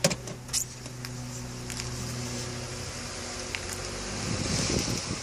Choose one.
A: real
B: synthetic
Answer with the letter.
A